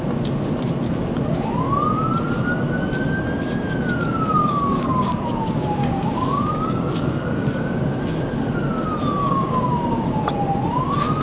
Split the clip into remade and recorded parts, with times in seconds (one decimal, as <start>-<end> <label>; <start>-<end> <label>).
0.0-4.4 recorded; 4.4-8.0 remade; 8.0-9.2 recorded; 9.2-10.2 remade; 10.2-11.2 recorded